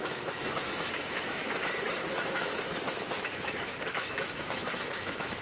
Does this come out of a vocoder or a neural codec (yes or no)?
yes